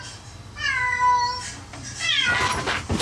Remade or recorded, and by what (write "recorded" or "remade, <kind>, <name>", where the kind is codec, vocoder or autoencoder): recorded